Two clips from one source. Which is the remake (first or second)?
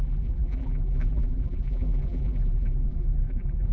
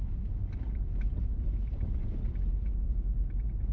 first